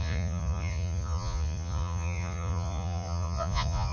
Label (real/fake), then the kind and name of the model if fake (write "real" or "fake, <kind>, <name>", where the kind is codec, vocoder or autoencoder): fake, vocoder, Vocos